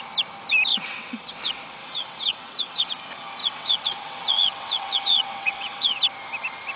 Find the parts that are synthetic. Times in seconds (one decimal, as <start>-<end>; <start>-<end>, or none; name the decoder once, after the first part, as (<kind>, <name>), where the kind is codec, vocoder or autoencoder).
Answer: 0.7-1.3 (vocoder, WaveNeXt); 1.8-2.9; 3.4-6.0